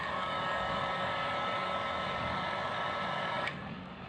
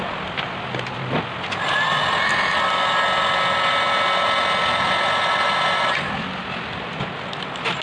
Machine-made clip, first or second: first